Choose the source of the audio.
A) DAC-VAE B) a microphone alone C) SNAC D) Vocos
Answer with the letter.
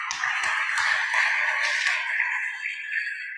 B